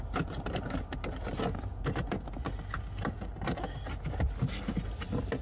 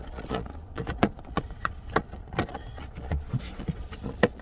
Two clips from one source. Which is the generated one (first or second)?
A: second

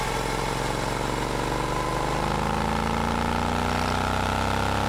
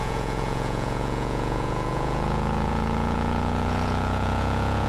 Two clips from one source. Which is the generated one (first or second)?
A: second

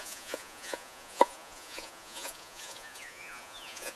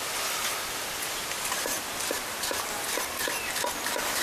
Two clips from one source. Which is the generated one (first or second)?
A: first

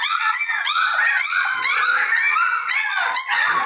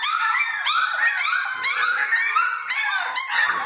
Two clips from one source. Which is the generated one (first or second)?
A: first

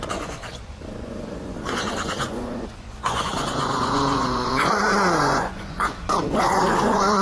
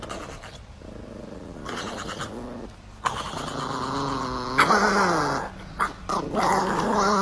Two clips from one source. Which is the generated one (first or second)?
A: first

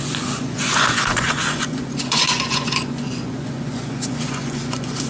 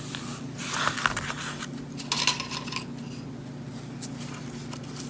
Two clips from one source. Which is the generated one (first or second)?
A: first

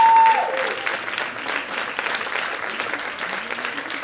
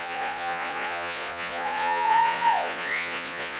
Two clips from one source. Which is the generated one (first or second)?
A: second